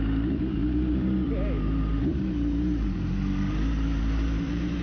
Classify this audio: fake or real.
fake